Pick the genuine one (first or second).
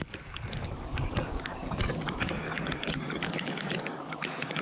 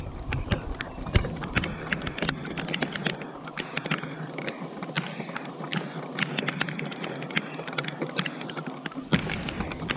second